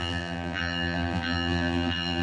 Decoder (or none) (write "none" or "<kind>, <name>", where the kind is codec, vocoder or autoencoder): vocoder, BigVGAN v2